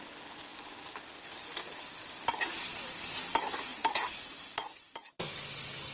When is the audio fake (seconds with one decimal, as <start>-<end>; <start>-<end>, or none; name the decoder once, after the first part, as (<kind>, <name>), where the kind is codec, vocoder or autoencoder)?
none